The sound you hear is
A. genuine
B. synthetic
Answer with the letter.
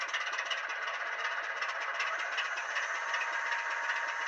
A